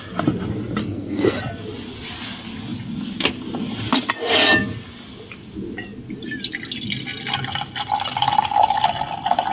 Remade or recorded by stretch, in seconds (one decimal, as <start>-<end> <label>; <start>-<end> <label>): 0.0-0.8 recorded; 0.8-1.4 remade; 1.4-9.5 recorded

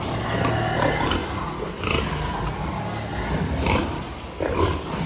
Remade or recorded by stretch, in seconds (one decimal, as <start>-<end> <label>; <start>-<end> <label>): 0.0-5.1 recorded

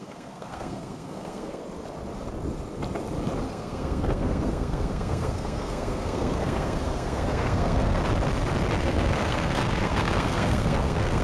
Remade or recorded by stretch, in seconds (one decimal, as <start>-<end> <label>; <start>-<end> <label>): 0.0-1.6 remade; 1.6-3.5 recorded; 3.5-8.0 remade; 8.0-8.8 recorded; 8.8-11.2 remade

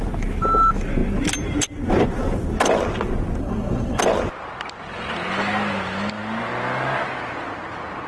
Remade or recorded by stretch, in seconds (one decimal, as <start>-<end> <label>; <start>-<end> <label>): 0.0-3.4 recorded; 3.4-4.0 remade; 4.0-8.1 recorded

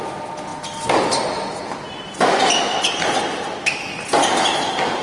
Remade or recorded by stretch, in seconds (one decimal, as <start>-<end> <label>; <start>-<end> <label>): 0.0-5.0 recorded